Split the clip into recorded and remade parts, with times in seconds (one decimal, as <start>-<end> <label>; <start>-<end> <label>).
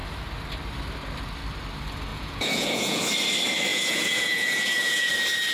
0.0-2.1 recorded; 2.1-3.0 remade; 3.0-3.7 recorded; 3.7-5.1 remade; 5.1-5.5 recorded